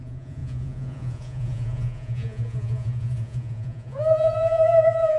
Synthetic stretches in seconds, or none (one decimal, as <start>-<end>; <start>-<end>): 0.0-5.2